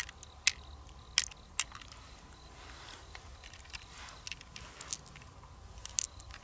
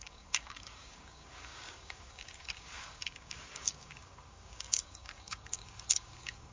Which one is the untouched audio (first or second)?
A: first